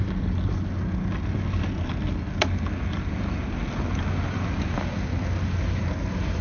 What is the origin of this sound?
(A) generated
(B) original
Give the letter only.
B